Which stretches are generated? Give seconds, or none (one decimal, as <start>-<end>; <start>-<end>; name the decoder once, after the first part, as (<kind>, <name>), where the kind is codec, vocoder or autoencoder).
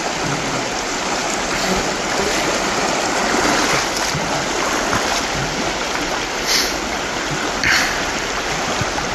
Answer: none